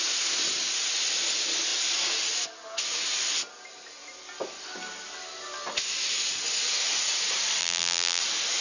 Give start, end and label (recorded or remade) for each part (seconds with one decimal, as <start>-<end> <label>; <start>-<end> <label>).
0.0-7.6 recorded; 7.6-8.2 remade; 8.2-8.6 recorded